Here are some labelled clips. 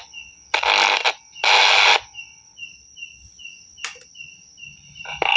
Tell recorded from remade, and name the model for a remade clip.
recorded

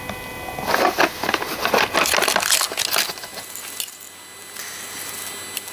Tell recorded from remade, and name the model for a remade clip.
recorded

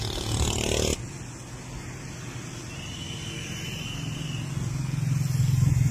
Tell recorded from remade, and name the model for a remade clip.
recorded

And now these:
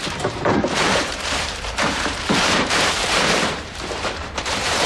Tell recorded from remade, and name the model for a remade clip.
remade, vocoder, BigVGAN v2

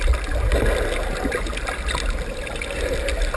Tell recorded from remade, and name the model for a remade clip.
recorded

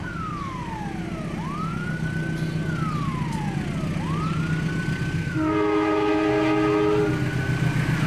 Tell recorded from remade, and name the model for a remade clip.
recorded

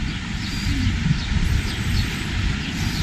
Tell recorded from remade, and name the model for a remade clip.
recorded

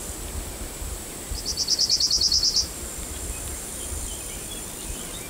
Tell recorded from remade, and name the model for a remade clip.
remade, vocoder, BigVGAN v2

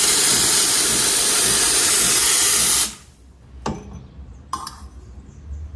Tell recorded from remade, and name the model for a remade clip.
recorded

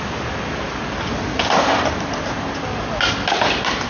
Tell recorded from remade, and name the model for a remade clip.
recorded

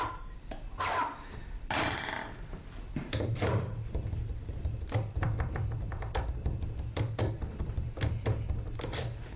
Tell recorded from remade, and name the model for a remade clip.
remade, vocoder, BigVGAN v2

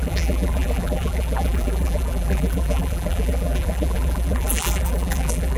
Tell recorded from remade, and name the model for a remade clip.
remade, vocoder, BigVGAN v2